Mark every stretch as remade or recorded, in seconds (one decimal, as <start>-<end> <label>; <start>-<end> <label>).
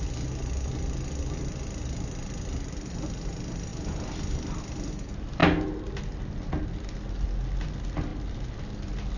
0.0-9.2 recorded